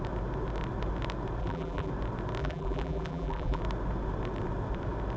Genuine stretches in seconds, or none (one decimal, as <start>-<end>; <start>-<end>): 0.0-1.4; 1.9-2.4; 3.6-5.2